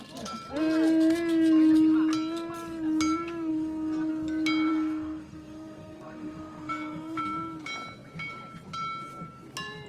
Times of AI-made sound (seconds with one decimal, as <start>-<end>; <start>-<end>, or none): 3.5-4.1; 4.7-7.2